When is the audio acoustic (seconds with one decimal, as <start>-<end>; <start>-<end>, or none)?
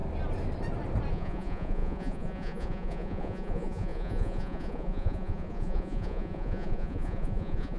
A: 0.0-1.1